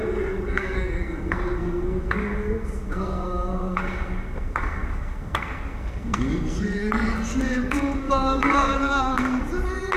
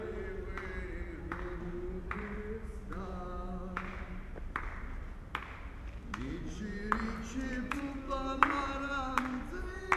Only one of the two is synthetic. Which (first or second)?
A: first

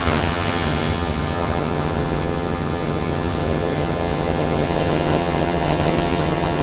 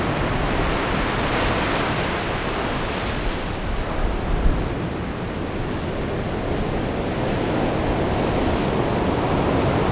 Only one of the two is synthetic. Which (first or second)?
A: first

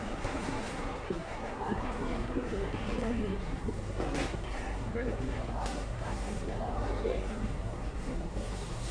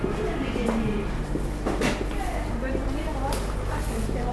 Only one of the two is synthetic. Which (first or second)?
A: first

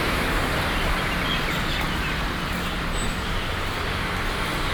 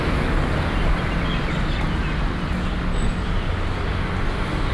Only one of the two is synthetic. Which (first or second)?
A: first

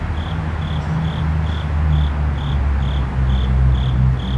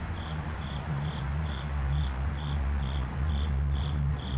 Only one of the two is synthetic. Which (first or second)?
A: second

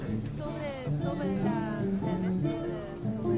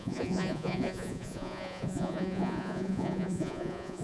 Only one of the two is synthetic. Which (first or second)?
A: second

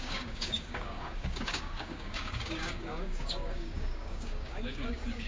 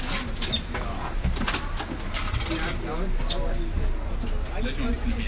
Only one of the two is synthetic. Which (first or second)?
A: first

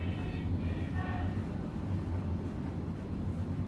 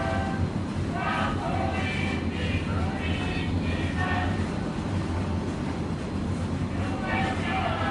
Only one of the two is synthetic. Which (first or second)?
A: first